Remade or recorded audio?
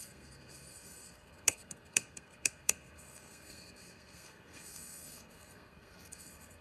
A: remade